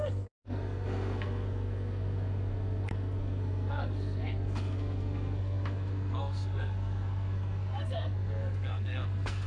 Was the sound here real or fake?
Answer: fake